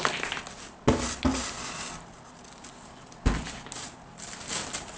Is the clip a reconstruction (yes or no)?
no